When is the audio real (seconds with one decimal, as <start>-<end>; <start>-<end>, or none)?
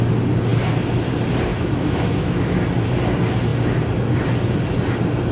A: 0.0-1.5; 2.6-5.3